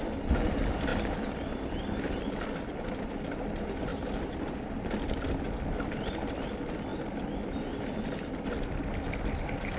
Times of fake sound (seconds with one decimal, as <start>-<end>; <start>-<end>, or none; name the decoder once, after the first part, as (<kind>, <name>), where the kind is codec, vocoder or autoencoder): 0.9-3.2 (vocoder, BigVGAN v2); 3.9-6.5; 6.9-7.8